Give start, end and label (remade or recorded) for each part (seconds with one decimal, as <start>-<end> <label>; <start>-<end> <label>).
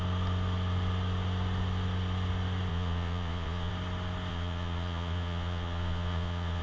0.0-2.7 recorded; 2.7-3.7 remade; 3.7-4.3 recorded; 4.3-6.6 remade